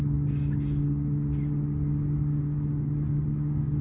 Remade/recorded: remade